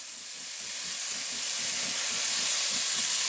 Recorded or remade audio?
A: recorded